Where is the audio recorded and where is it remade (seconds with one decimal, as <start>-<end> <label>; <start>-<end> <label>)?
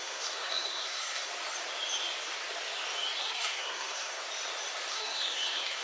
0.0-1.3 remade; 1.3-3.2 recorded; 3.2-4.2 remade; 4.2-4.9 recorded; 4.9-5.8 remade